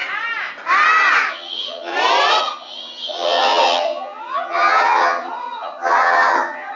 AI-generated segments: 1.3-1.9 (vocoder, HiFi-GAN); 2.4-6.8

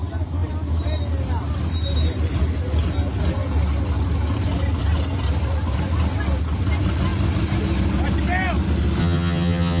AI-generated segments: 9.0-9.8 (vocoder, HiFi-GAN)

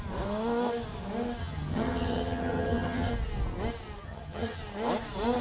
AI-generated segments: 1.4-3.1 (vocoder, HiFi-GAN); 4.0-4.6

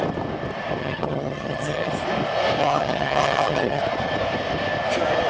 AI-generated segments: 0.8-1.9 (vocoder, HiFi-GAN); 2.6-3.8

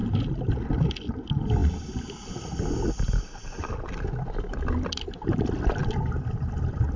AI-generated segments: none

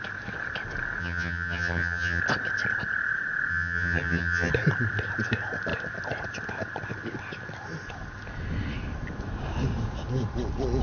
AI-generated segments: 1.0-2.2 (vocoder, HiFi-GAN); 3.5-4.5